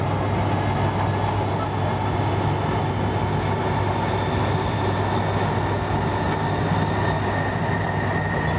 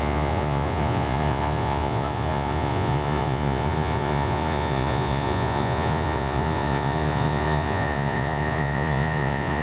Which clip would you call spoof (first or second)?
second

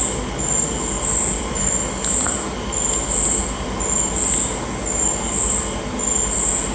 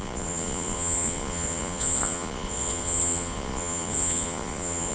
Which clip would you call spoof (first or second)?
second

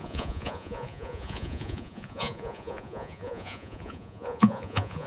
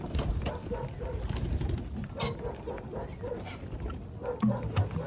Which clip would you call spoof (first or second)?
first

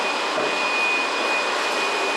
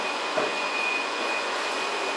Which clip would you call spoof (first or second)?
second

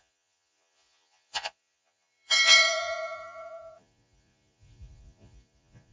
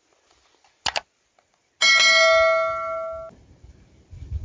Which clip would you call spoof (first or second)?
first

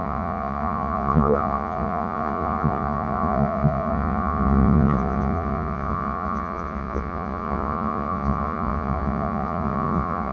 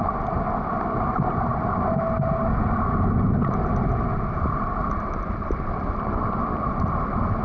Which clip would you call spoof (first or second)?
first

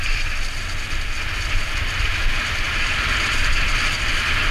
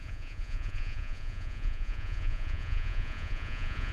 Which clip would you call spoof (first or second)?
second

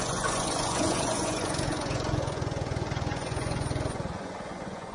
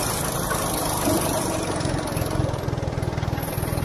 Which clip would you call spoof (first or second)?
first